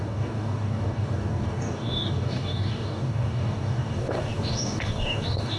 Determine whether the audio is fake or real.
fake